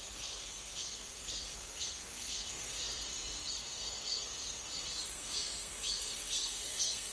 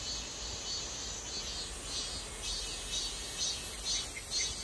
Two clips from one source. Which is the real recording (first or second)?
second